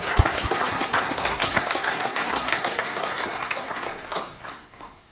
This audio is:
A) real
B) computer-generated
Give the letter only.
B